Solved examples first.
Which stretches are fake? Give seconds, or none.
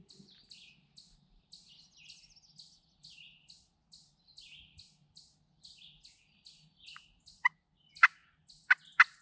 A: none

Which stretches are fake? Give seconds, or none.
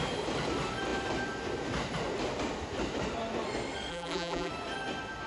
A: 3.9-4.5 (vocoder, BigVGAN v2)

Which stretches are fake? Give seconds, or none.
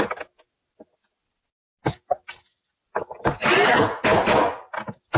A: none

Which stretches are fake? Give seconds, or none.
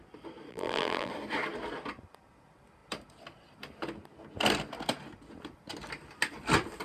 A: 0.5-1.1 (vocoder, BigVGAN v2)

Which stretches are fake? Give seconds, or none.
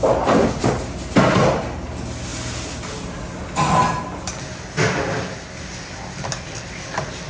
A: none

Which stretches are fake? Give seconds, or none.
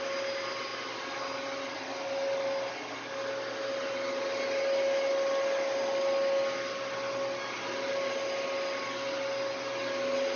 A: none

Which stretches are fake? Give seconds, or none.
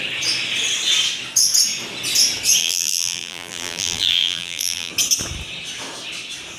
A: 2.6-4.9 (vocoder, BigVGAN v2)